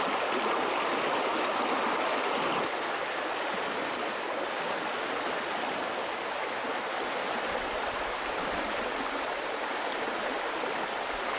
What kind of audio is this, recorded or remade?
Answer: recorded